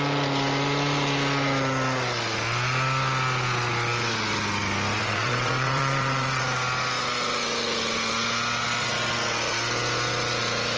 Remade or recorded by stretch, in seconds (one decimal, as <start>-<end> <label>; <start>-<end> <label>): 0.0-5.0 recorded; 5.0-6.4 remade; 6.4-10.8 recorded